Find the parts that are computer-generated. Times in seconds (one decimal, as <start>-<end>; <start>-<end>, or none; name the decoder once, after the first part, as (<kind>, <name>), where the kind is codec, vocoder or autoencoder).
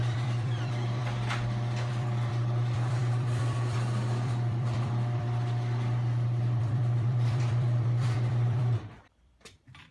0.0-1.0 (vocoder, BigVGAN v2); 1.9-9.9